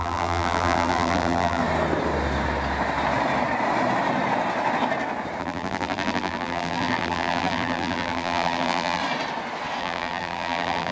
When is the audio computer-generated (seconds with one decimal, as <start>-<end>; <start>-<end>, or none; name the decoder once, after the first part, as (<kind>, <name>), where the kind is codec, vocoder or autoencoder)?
0.0-1.6 (vocoder, BigVGAN v2); 5.4-9.0; 9.8-10.9